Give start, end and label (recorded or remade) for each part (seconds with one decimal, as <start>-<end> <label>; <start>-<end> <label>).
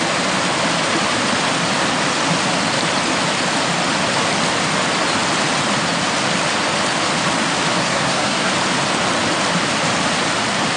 0.0-7.8 recorded; 7.8-8.5 remade; 8.5-10.8 recorded